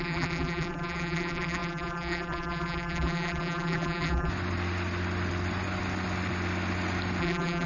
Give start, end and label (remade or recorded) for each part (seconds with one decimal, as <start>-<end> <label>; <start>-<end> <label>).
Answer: 0.0-4.3 remade; 4.3-7.2 recorded; 7.2-7.7 remade